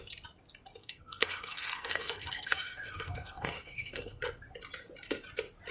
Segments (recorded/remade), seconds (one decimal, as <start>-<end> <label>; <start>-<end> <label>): 0.0-0.8 recorded; 0.8-4.2 remade; 4.2-5.7 recorded